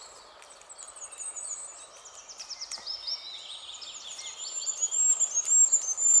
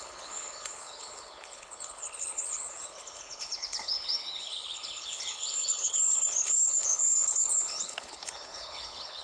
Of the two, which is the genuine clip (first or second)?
first